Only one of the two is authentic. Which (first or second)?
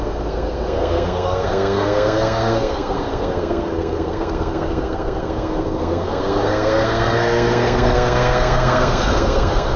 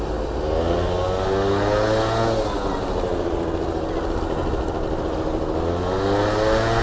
second